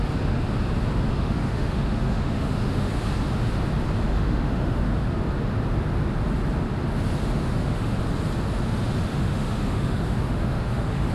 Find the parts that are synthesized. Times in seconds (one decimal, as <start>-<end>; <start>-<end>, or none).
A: 1.1-2.9; 4.1-4.8; 7.4-8.0; 9.1-11.1